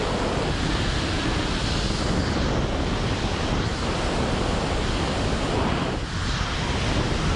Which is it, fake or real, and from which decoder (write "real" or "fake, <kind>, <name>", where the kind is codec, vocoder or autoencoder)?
real